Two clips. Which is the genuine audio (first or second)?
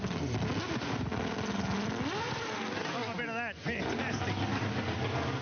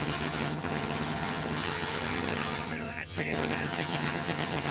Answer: first